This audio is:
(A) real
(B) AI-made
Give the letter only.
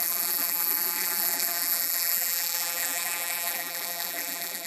B